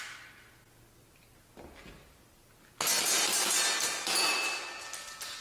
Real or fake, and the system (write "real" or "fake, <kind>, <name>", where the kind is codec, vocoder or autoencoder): real